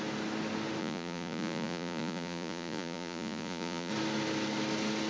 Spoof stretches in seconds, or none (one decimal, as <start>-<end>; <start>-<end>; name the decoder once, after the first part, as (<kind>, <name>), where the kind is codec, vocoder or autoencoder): 0.8-3.9 (vocoder, Vocos)